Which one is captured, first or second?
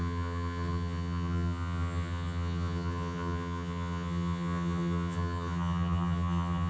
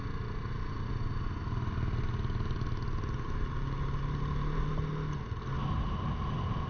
second